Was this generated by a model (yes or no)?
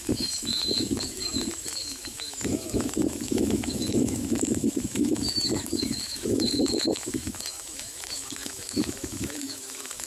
yes